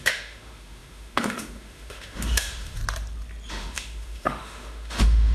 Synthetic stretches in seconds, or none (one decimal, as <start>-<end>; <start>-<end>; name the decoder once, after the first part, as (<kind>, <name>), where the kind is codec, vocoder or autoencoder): 0.0-2.8 (autoencoder, DAC-VAE); 3.5-5.3